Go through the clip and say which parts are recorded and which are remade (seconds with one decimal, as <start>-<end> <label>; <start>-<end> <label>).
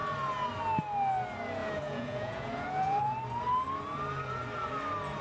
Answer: 0.0-1.6 recorded; 1.6-3.0 remade; 3.0-5.2 recorded